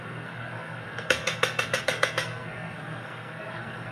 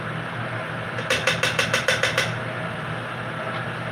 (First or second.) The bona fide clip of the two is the second